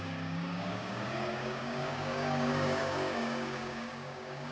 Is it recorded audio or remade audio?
remade